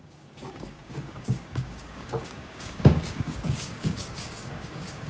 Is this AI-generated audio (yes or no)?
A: yes